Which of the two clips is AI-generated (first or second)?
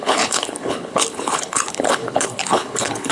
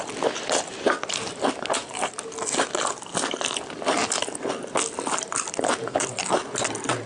first